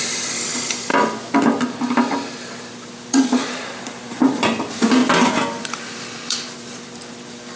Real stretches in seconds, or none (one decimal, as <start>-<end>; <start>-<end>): 0.9-1.8